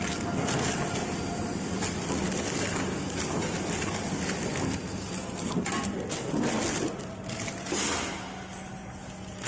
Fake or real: real